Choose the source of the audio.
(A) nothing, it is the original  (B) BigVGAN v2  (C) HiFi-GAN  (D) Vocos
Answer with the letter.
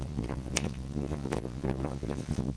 D